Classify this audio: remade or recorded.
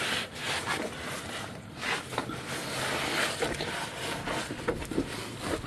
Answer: recorded